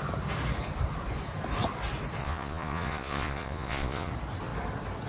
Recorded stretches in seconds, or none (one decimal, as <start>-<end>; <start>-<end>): 0.0-2.2; 4.1-5.1